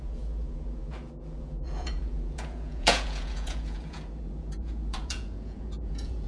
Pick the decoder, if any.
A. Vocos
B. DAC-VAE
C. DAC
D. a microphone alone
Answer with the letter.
A